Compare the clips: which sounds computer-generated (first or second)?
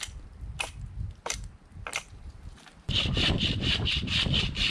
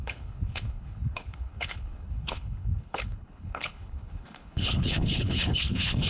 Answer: second